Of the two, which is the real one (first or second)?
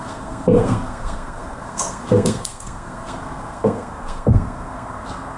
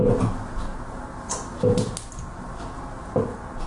second